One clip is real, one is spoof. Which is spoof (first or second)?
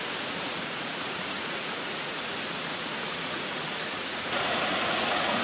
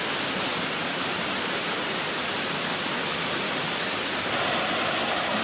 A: first